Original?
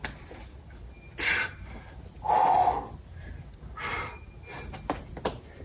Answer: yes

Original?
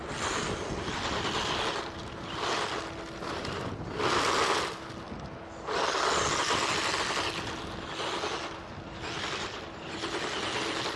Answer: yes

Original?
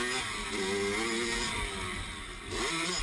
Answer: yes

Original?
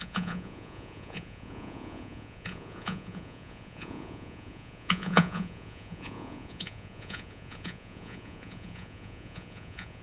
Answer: no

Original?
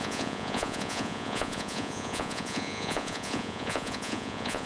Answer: no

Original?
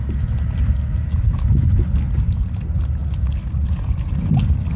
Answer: yes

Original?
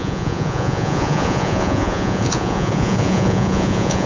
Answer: no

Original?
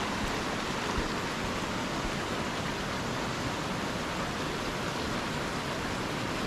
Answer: yes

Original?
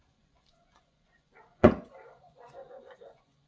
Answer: no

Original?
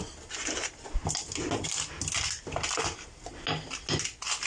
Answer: yes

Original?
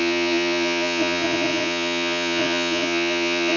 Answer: no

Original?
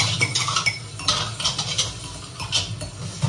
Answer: yes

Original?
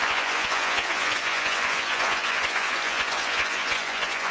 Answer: no